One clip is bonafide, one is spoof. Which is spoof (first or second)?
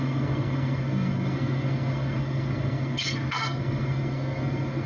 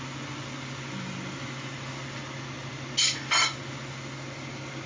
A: first